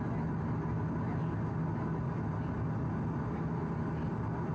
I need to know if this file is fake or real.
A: real